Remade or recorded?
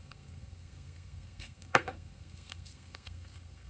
remade